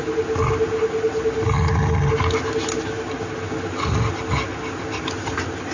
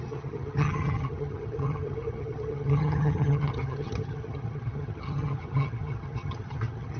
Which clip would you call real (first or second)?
first